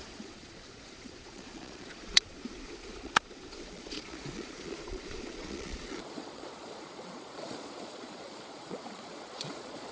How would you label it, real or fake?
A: fake